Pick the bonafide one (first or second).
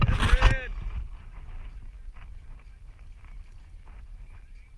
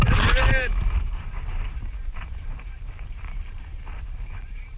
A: first